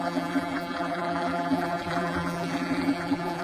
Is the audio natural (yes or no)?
no